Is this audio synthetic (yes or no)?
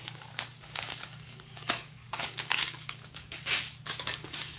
yes